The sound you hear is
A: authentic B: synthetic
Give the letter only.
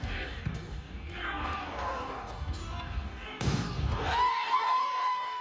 B